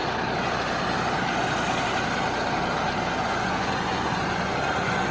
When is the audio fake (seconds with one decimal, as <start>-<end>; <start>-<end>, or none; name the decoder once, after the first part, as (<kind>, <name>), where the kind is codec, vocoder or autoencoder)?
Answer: 3.1-5.1 (vocoder, Vocos)